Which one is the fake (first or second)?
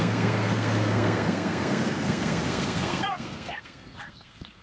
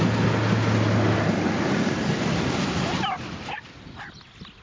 first